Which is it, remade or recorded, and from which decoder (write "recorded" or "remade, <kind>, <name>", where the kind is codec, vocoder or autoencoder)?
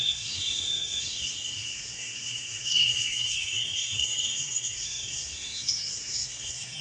remade, codec, SNAC